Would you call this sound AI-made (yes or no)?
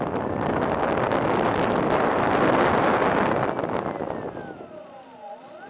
no